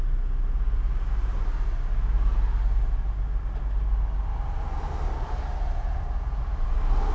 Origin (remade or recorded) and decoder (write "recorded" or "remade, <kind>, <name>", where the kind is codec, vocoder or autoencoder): recorded